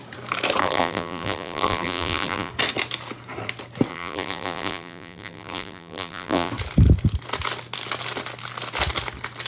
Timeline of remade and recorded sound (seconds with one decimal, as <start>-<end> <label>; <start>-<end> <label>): 0.0-0.6 recorded; 0.6-2.5 remade; 2.5-3.9 recorded; 3.9-6.5 remade; 6.5-9.5 recorded